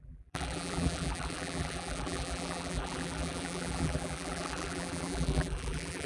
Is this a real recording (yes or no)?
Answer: no